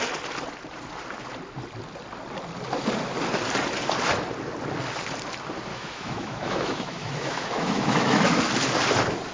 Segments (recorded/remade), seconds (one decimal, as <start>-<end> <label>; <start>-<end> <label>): 0.0-5.7 recorded; 5.7-8.4 remade; 8.4-9.3 recorded